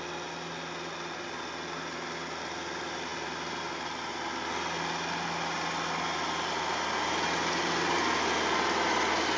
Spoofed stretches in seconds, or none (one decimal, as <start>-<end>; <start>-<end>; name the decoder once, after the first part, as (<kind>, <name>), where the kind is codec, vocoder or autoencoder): none

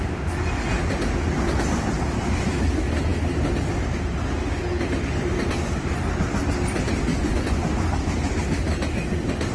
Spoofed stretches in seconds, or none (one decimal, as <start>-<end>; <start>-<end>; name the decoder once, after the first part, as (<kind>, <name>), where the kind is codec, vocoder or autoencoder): 7.1-7.6 (vocoder, Vocos)

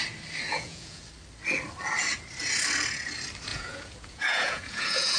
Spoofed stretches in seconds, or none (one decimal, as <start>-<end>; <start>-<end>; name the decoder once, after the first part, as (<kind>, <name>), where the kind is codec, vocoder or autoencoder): 0.5-1.0 (vocoder, Vocos); 3.5-5.2

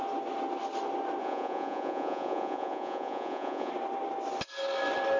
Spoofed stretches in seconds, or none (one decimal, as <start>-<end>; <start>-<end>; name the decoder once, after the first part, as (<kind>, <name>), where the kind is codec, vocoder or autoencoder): 1.2-3.7 (vocoder, Vocos)

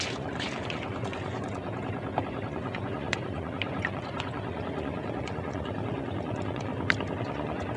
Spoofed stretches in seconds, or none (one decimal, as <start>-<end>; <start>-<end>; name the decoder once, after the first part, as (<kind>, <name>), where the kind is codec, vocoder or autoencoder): 0.0-1.6 (vocoder, Vocos); 2.4-6.7; 7.2-7.8